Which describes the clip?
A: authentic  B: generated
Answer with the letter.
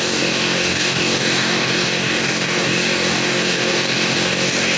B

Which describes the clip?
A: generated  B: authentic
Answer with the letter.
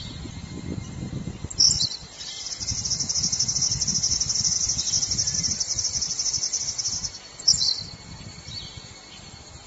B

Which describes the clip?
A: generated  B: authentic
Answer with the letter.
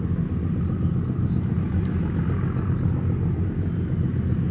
B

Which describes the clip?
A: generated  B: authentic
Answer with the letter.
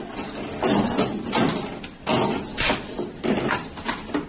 B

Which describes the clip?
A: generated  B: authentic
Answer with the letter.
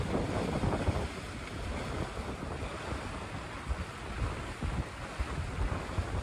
B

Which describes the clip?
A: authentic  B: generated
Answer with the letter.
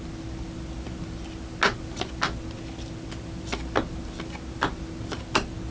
A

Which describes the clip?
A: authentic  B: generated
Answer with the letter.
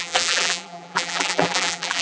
B